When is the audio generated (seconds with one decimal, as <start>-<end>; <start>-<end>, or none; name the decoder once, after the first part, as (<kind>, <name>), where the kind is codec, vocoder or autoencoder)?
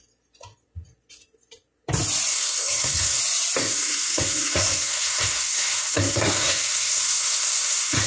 2.3-3.2 (codec, SNAC); 3.6-8.1